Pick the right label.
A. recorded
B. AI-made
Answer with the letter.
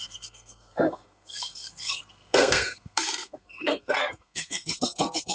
B